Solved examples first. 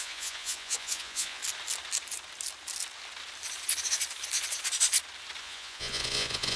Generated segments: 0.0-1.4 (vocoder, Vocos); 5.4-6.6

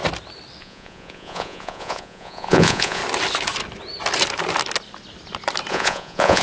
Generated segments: 0.6-3.0 (vocoder, Vocos); 5.7-6.4